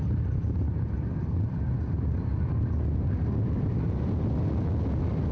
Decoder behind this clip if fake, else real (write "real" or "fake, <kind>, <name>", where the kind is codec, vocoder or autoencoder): real